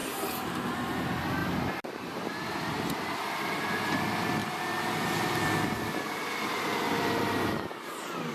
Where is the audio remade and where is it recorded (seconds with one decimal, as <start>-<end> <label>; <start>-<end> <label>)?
0.0-0.6 remade; 0.6-1.4 recorded; 1.4-2.3 remade; 2.3-8.3 recorded